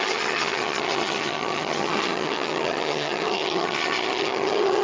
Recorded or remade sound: remade